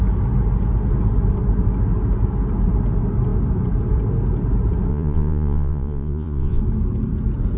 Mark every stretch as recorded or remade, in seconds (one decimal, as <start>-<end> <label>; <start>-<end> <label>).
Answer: 0.0-4.9 recorded; 4.9-6.6 remade; 6.6-7.6 recorded